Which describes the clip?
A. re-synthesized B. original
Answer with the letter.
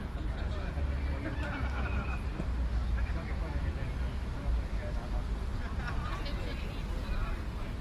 B